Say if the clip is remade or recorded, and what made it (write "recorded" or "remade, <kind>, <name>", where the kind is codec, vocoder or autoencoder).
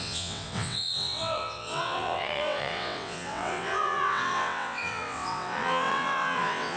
remade, vocoder, WaveNeXt